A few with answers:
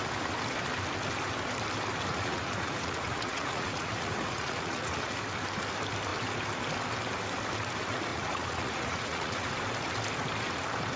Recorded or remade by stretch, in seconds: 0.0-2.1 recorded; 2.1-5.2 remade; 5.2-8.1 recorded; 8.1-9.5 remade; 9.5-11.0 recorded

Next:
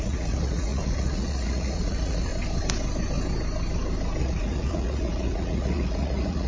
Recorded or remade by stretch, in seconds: 0.0-2.3 remade; 2.3-4.2 recorded; 4.2-6.5 remade

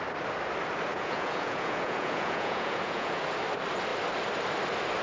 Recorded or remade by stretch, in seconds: 0.0-0.9 recorded; 0.9-3.2 remade; 3.2-5.0 recorded

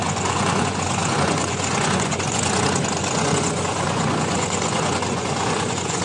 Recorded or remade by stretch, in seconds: 0.0-6.0 remade

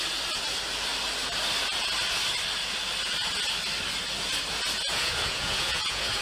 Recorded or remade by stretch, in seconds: 0.0-4.9 recorded; 4.9-6.2 remade